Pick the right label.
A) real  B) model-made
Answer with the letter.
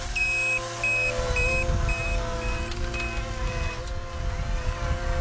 A